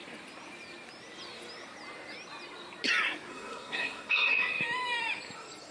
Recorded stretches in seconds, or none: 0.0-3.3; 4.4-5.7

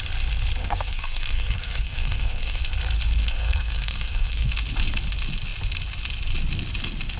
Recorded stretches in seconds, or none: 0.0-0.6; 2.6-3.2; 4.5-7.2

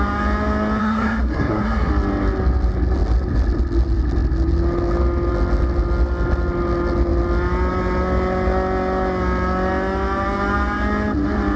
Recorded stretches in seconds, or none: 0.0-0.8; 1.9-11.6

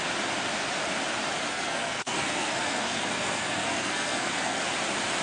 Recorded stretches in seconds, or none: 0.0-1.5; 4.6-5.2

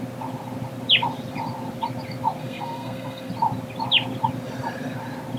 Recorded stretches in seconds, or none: 0.0-2.4; 3.3-5.4

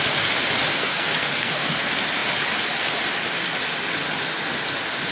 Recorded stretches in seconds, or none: 0.0-0.7; 1.8-5.1